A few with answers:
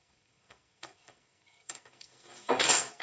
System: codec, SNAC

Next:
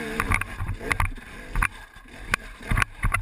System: vocoder, BigVGAN v2